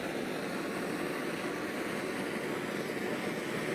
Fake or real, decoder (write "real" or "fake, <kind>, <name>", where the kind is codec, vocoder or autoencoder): real